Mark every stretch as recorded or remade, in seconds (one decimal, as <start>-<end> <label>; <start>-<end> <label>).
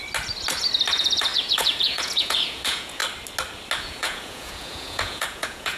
0.0-0.9 recorded; 0.9-3.0 remade; 3.0-3.8 recorded; 3.8-5.8 remade